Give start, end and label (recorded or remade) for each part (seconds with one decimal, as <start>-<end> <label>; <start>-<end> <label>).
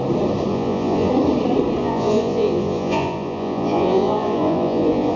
0.0-0.5 recorded; 0.5-1.1 remade; 1.1-1.8 recorded; 1.8-5.2 remade